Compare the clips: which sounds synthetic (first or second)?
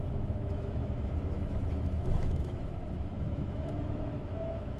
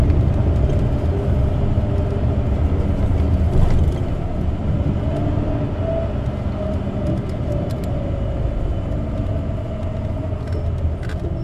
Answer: first